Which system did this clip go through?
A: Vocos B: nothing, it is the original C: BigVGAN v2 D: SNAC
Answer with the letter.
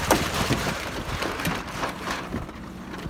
C